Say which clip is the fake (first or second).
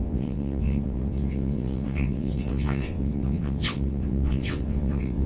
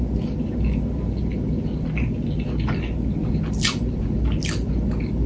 first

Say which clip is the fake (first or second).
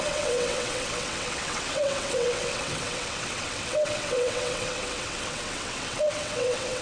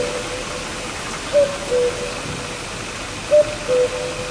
first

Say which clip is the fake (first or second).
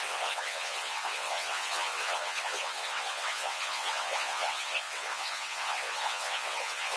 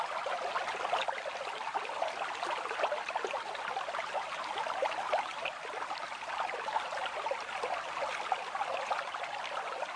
first